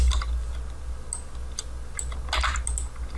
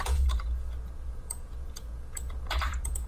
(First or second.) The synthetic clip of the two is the second